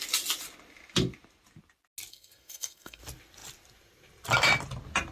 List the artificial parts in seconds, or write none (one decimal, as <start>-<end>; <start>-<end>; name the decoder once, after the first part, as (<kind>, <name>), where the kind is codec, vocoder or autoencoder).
2.1-3.0 (codec, SNAC)